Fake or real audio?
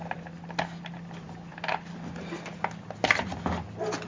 real